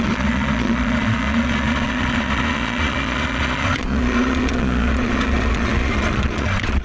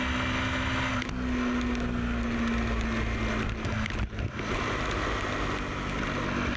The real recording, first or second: second